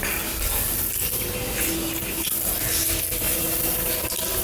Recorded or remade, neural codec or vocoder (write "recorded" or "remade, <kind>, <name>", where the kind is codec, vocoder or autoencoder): recorded